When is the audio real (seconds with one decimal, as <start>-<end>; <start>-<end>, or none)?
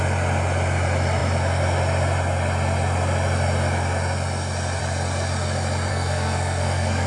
0.0-5.9